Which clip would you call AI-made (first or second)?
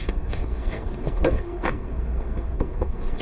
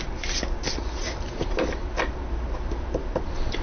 first